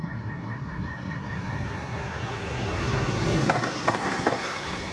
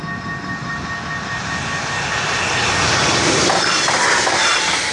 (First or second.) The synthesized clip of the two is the first